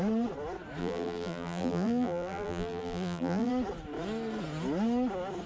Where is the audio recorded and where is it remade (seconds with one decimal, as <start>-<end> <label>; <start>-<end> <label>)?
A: 0.0-0.8 recorded; 0.8-3.5 remade; 3.5-5.5 recorded